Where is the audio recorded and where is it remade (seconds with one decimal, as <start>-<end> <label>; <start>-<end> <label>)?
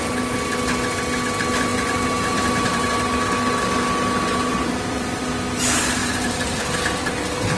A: 0.0-1.7 recorded; 1.7-2.9 remade; 2.9-4.5 recorded; 4.5-5.2 remade; 5.2-6.0 recorded; 6.0-7.0 remade; 7.0-7.6 recorded